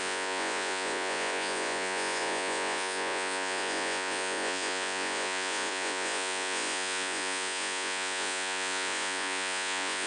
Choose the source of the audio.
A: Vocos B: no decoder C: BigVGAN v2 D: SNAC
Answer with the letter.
A